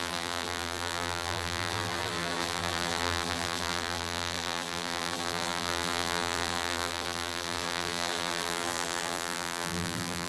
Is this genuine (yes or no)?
no